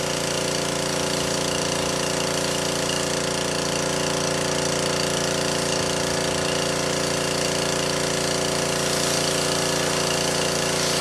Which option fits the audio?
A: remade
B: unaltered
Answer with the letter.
B